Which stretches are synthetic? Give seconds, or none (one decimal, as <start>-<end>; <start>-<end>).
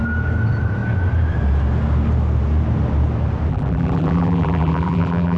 3.5-5.4